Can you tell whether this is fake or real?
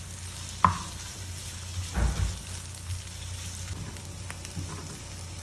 real